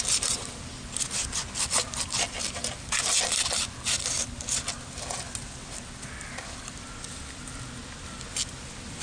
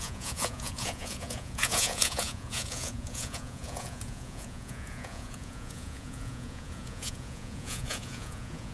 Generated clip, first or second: second